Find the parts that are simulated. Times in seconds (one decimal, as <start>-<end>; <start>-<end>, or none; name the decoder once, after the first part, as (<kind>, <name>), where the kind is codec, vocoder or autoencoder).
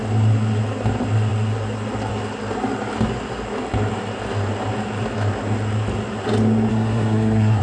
6.7-7.6 (codec, SNAC)